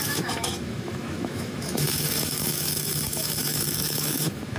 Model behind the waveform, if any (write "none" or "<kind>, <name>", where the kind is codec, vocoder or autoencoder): autoencoder, DAC-VAE